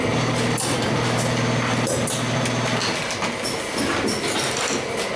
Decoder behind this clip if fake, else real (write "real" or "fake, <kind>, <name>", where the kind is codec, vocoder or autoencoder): real